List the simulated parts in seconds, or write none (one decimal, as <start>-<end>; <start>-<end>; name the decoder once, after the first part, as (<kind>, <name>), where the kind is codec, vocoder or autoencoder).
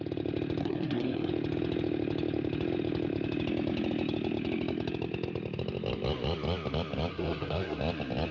0.6-1.3 (codec, SNAC); 7.1-7.8